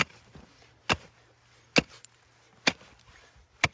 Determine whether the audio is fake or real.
real